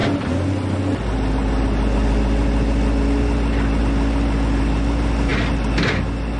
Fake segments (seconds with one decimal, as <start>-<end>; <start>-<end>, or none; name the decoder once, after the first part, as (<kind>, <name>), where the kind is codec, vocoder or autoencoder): none